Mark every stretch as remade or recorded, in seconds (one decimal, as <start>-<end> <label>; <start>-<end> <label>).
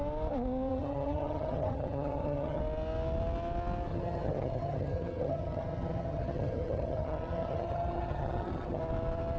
0.0-0.7 recorded; 0.7-2.6 remade; 2.6-3.9 recorded; 3.9-8.8 remade; 8.8-9.4 recorded